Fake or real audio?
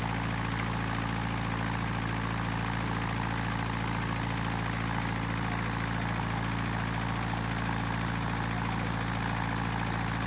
real